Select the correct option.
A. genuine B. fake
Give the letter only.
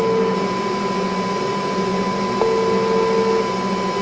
A